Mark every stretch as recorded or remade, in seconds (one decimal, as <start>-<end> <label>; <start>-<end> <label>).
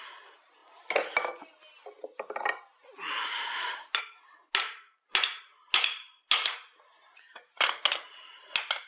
0.0-8.9 recorded